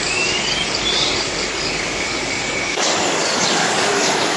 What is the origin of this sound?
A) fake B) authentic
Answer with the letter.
A